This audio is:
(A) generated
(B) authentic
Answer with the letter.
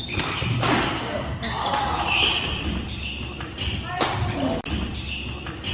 B